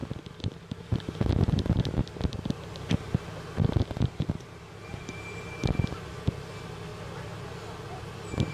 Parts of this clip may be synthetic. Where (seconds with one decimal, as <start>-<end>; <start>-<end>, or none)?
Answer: none